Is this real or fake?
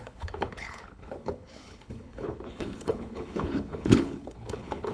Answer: fake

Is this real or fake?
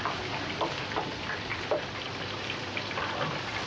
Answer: fake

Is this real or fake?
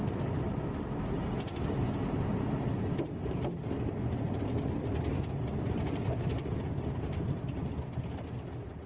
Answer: real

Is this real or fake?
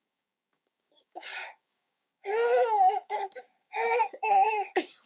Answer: fake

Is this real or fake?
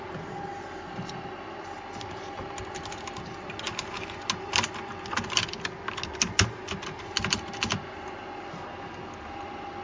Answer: real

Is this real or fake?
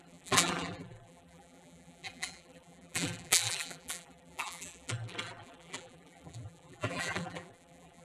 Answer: fake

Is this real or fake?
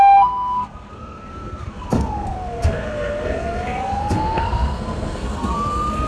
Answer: fake